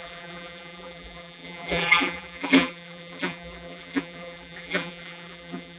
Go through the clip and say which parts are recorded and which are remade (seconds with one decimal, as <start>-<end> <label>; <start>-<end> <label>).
0.0-5.8 remade